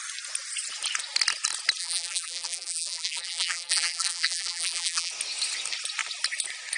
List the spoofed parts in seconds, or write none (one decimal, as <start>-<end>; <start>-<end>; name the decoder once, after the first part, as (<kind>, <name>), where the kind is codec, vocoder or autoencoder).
1.8-5.1 (vocoder, BigVGAN v2)